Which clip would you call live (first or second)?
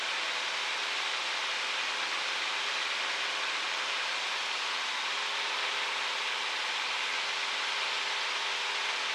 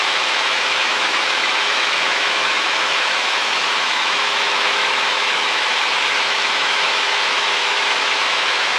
first